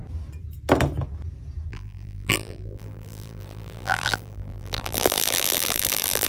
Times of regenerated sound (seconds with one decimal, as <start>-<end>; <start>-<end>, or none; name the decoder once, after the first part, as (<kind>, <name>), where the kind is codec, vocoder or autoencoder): 1.7-6.3 (vocoder, BigVGAN v2)